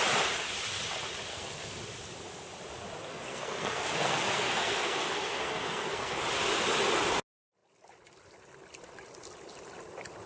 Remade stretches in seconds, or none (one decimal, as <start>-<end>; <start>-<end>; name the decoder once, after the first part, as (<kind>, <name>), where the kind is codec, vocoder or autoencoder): 1.3-1.8 (codec, SNAC); 3.1-6.2